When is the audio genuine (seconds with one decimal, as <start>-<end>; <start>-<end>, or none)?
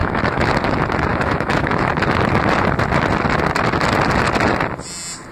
0.5-1.1; 1.9-5.3